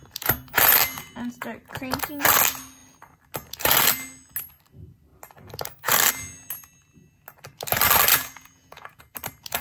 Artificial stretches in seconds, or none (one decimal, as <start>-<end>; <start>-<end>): 8.1-9.0

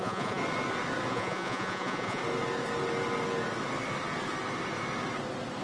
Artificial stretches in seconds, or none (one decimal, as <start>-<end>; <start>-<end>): 0.0-0.4; 1.1-2.2

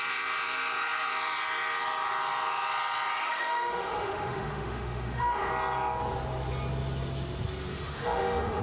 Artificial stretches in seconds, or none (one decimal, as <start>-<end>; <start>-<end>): 3.2-5.5; 7.7-8.6

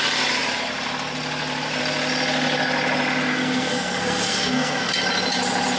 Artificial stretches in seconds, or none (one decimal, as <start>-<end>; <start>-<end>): 3.3-4.9

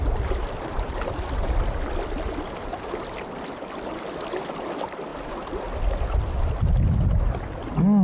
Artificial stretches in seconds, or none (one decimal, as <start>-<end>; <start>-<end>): none

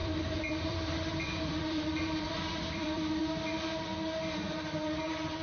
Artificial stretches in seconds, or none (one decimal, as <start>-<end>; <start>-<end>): 0.0-3.2

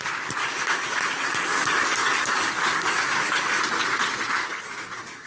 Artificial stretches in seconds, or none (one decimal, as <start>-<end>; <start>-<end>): 0.4-3.6; 4.4-5.3

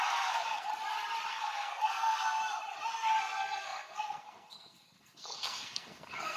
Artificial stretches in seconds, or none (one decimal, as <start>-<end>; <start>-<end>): 0.0-0.7; 1.3-2.4; 3.2-6.4